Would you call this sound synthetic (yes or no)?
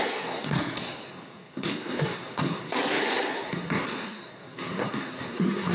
yes